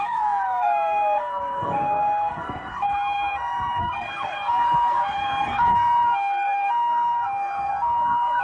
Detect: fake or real fake